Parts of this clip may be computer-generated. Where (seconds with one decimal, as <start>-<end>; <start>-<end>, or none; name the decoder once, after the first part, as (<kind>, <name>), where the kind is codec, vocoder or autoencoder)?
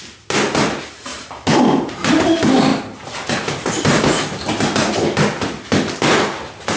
1.1-2.1 (vocoder, BigVGAN v2); 2.7-3.7